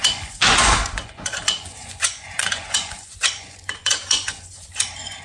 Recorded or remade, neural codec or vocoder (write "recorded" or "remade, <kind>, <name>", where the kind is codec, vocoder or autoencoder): remade, vocoder, Vocos